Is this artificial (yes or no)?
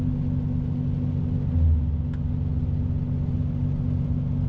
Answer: no